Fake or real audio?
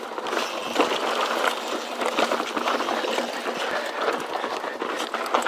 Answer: real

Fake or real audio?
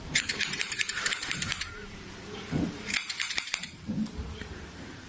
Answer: fake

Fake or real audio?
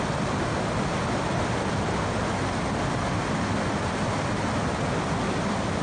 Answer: real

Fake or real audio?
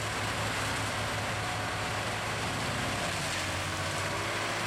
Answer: real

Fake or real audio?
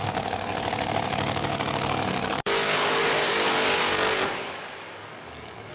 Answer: fake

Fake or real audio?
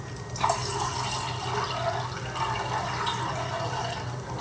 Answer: real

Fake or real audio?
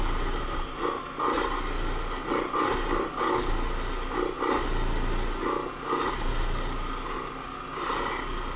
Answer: real